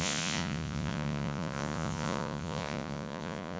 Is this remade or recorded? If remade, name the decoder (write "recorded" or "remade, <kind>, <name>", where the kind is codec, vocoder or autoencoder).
remade, vocoder, Vocos